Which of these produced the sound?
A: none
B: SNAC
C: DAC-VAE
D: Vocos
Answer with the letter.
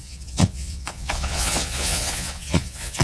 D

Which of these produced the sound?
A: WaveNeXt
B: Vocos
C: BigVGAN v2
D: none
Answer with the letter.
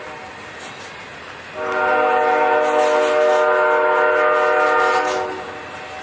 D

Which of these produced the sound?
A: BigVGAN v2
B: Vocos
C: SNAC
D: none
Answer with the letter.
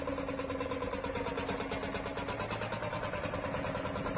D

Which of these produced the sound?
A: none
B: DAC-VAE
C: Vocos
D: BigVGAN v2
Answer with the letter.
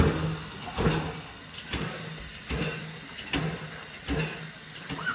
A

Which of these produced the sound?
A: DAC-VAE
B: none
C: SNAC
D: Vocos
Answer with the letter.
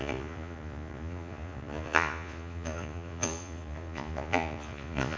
D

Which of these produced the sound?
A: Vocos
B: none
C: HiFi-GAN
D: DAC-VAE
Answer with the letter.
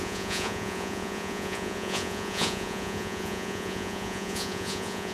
A